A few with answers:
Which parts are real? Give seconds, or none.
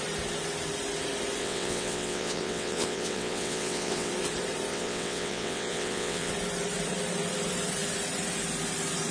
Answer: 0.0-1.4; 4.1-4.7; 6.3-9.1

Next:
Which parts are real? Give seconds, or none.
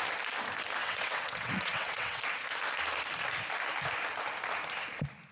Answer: 0.0-0.8; 2.2-5.3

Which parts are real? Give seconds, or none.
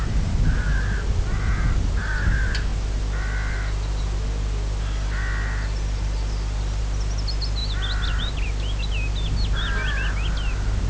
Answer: 0.0-10.9